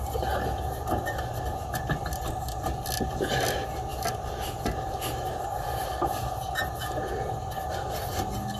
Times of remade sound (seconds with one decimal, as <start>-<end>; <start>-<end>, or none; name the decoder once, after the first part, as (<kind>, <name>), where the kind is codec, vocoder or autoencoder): none